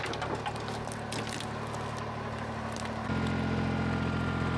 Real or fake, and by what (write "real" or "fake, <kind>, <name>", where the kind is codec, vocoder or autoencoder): real